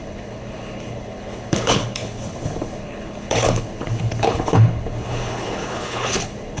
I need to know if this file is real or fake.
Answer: fake